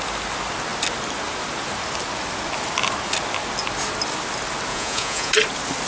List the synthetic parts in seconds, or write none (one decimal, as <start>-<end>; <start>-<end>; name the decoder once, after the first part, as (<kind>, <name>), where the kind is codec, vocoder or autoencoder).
4.7-5.3 (vocoder, Vocos)